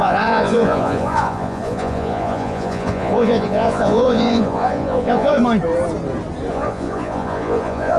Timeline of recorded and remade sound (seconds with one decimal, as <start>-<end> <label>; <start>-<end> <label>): 0.0-5.4 remade; 5.4-6.5 recorded; 6.5-8.0 remade